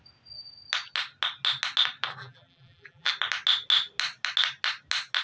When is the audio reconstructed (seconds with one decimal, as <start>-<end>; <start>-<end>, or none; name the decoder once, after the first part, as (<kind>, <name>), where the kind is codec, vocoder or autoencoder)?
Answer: 2.2-3.1 (vocoder, BigVGAN v2)